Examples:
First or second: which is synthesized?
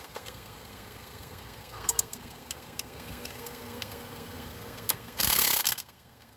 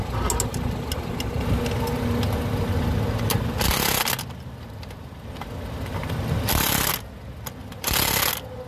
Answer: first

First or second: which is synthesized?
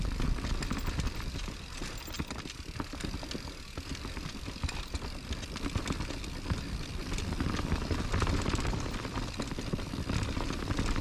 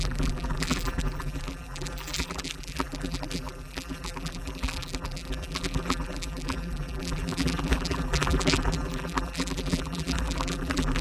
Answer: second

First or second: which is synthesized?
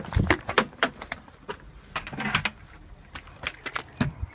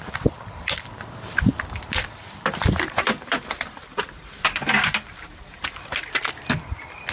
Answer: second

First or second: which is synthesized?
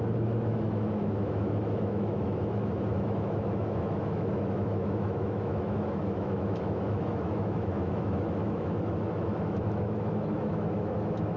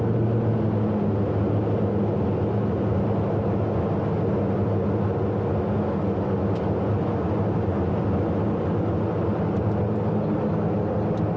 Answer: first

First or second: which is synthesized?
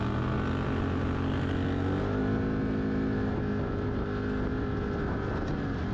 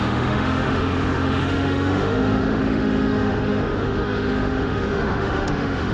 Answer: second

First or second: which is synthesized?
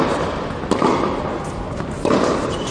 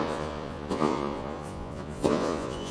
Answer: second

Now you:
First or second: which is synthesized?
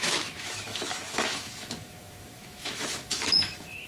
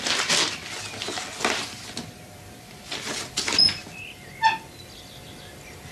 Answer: first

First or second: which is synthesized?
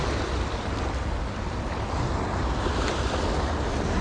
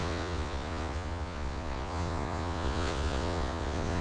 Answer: second